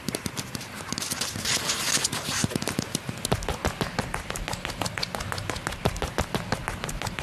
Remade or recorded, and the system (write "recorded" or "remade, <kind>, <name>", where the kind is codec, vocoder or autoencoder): recorded